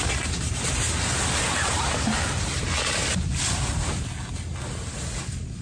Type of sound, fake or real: real